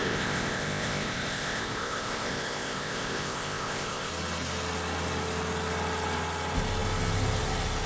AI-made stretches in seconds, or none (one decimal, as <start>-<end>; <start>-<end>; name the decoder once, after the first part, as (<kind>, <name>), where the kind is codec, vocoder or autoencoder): 0.0-4.1 (codec, ZipCodec)